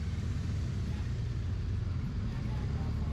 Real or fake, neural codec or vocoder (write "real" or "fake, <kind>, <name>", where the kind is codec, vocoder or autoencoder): fake, vocoder, BigVGAN v2